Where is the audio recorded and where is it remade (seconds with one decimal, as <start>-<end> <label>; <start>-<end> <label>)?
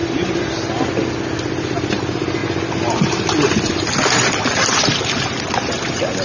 0.0-6.2 recorded